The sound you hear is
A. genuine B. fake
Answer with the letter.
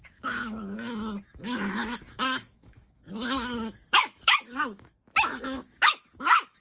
B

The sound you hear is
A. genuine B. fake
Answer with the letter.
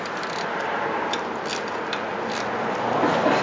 A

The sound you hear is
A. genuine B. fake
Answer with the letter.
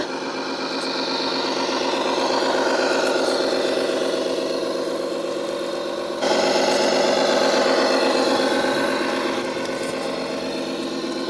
A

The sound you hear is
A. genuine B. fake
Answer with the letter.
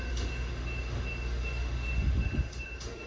B